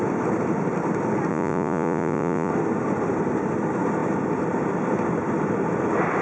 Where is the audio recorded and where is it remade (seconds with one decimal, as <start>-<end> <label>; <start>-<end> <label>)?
0.0-1.3 recorded; 1.3-2.5 remade; 2.5-6.2 recorded